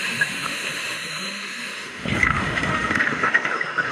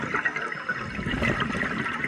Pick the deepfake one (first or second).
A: first